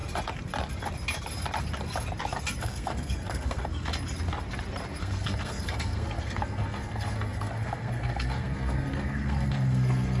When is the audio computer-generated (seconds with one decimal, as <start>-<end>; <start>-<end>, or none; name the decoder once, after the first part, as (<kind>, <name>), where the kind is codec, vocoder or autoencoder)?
2.6-3.9 (codec, SNAC); 5.0-10.2